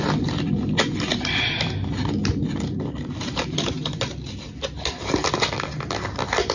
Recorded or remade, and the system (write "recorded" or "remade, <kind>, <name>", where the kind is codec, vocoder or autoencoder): recorded